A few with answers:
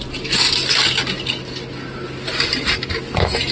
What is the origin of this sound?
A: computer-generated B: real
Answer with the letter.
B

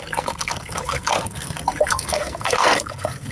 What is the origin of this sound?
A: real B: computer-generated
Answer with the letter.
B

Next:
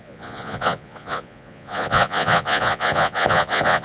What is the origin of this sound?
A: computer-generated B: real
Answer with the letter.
A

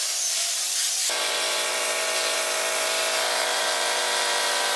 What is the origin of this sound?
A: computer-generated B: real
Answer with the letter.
A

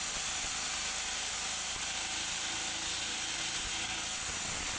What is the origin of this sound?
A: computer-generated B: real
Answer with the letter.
B